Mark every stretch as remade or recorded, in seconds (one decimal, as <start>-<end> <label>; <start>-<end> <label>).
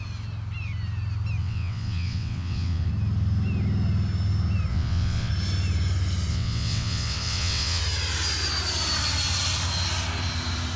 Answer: 0.0-1.4 recorded; 1.4-2.9 remade; 2.9-4.7 recorded; 4.7-5.3 remade; 5.3-6.3 recorded; 6.3-7.8 remade; 7.8-10.8 recorded